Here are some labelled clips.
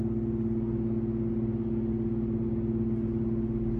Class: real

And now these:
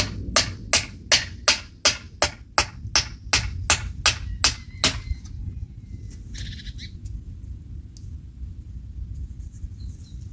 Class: real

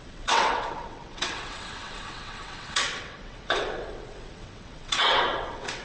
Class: fake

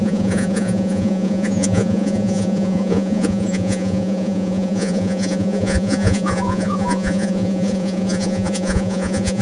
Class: fake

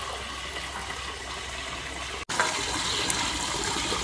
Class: real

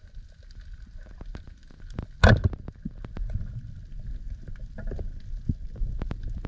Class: real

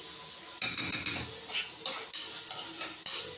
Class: real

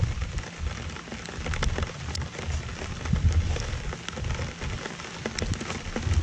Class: real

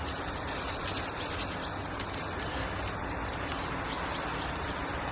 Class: real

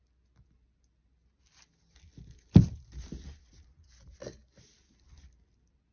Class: real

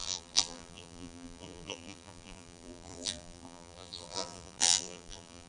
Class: fake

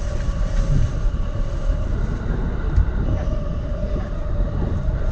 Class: fake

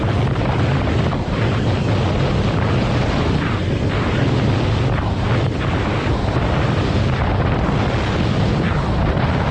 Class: real